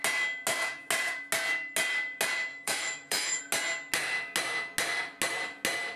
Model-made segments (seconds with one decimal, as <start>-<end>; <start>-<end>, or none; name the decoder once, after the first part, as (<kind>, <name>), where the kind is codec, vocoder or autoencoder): 2.5-3.4 (autoencoder, DAC-VAE)

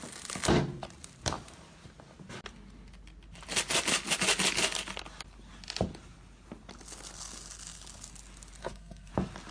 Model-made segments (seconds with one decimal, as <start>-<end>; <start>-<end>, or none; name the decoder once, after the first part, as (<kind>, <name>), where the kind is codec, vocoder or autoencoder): 8.6-9.1 (codec, SNAC)

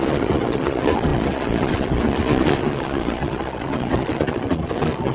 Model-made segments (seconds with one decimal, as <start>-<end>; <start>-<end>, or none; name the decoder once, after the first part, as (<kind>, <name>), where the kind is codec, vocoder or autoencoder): 0.0-5.1 (vocoder, Vocos)

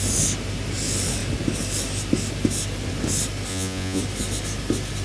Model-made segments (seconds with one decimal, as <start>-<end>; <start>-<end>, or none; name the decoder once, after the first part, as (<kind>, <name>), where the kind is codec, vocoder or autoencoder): 3.5-4.0 (vocoder, Vocos)

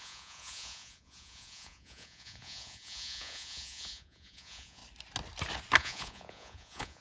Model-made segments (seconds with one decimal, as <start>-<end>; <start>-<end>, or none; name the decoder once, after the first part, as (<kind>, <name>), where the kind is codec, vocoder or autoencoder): 0.0-4.8 (vocoder, Vocos); 5.8-7.0